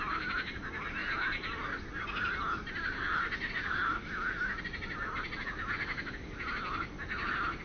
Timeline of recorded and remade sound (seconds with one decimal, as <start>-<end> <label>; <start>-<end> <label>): 0.0-7.6 recorded